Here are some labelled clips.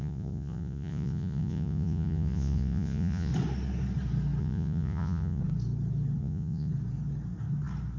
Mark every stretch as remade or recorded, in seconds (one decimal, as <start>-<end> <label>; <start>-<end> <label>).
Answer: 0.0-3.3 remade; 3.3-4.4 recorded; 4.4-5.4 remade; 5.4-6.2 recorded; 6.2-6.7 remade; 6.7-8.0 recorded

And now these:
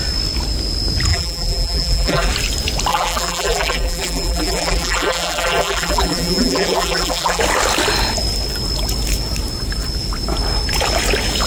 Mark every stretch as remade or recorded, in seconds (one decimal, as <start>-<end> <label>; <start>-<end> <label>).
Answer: 0.0-1.1 recorded; 1.1-2.3 remade; 2.3-2.9 recorded; 2.9-7.4 remade; 7.4-11.5 recorded

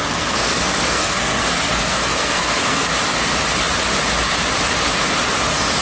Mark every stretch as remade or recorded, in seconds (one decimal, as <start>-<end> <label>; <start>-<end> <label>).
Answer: 0.0-2.9 remade; 2.9-5.8 recorded

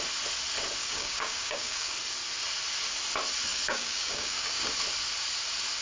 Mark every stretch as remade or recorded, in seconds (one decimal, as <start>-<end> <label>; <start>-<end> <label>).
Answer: 0.0-0.8 recorded; 0.8-1.9 remade; 1.9-3.5 recorded; 3.5-4.7 remade; 4.7-5.8 recorded